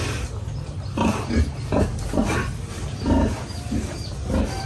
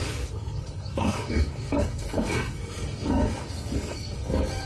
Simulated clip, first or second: second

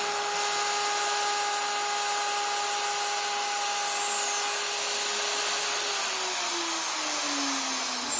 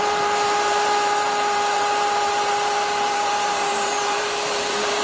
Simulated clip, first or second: second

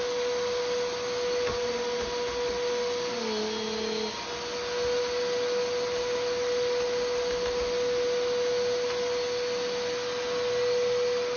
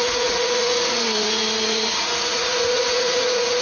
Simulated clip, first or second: second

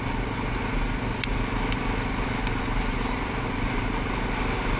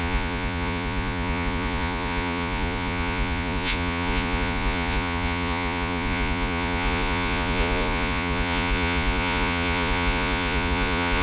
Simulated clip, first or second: second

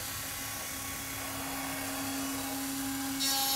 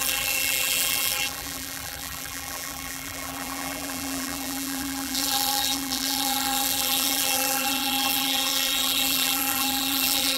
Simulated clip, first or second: second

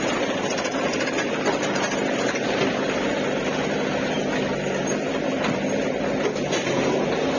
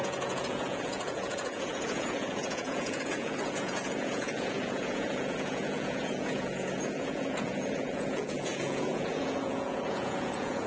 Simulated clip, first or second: second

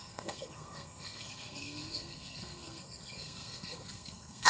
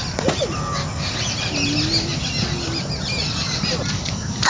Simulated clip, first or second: first